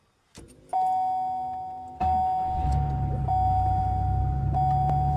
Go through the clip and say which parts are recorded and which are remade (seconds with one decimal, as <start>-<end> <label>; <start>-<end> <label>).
0.0-5.2 recorded